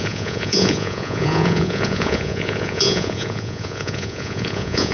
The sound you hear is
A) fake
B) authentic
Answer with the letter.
A